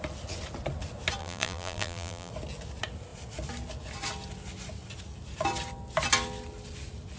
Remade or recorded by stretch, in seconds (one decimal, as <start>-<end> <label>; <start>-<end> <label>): 0.0-1.2 recorded; 1.2-2.3 remade; 2.3-7.2 recorded